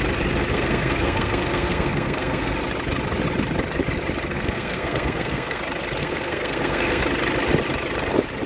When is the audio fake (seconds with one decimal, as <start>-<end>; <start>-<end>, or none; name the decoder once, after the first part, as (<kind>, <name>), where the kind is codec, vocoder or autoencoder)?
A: 0.5-2.5 (codec, SNAC); 4.3-5.6; 6.0-7.0